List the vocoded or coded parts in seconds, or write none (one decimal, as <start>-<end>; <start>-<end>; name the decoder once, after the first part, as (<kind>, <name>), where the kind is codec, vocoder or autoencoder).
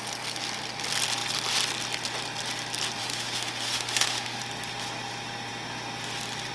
3.0-4.4 (autoencoder, DAC-VAE)